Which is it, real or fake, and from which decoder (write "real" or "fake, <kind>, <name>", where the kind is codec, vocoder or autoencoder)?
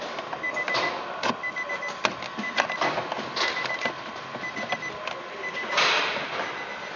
real